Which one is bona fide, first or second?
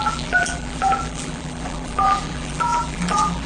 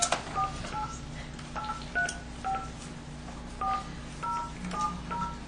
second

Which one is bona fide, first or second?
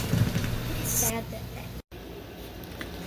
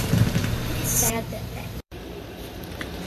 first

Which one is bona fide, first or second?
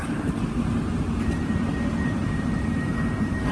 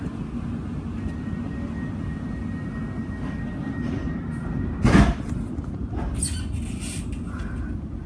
second